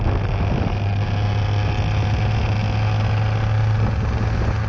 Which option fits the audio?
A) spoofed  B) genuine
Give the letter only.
B